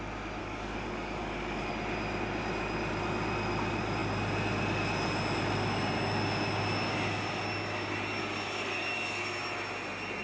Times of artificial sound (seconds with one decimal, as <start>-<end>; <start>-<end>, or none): 0.4-1.7